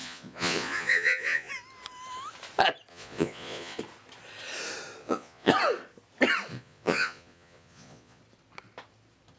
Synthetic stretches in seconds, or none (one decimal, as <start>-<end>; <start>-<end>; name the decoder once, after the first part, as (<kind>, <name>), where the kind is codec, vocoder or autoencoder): 0.0-1.5 (vocoder, Vocos); 2.9-3.8; 5.0-5.5; 6.5-8.2